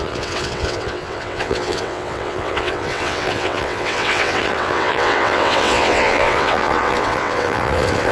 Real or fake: fake